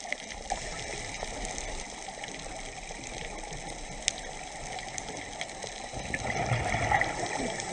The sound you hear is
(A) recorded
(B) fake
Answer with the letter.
A